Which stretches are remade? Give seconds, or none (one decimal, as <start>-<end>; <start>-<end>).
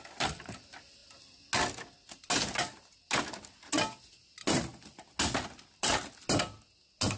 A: none